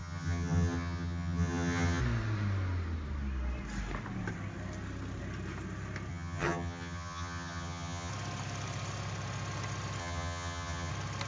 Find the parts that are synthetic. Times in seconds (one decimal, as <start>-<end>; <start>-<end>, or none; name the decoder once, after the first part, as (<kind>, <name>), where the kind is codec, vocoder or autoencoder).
0.0-2.0 (vocoder, HiFi-GAN); 6.1-8.1; 10.0-10.9